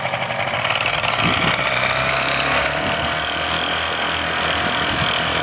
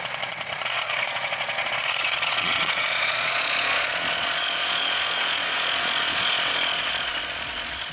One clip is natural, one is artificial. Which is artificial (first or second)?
second